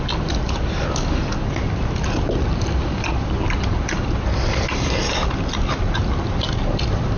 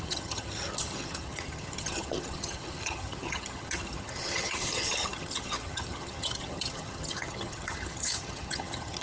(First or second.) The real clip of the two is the first